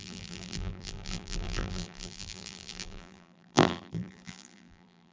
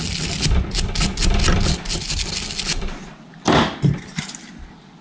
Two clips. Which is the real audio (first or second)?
second